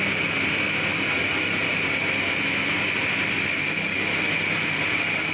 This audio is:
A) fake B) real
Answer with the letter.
B